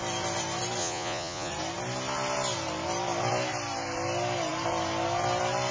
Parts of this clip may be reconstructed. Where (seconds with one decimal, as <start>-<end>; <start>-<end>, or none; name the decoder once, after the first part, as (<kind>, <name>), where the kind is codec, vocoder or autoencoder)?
0.8-1.5 (vocoder, Vocos)